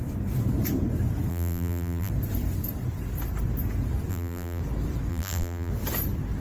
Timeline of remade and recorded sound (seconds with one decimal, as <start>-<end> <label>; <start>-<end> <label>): 0.0-1.3 recorded; 1.3-2.1 remade; 2.1-4.1 recorded; 4.1-4.6 remade; 4.6-5.1 recorded; 5.1-5.7 remade; 5.7-6.4 recorded